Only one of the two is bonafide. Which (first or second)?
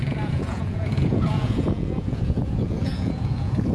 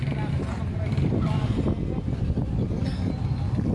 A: second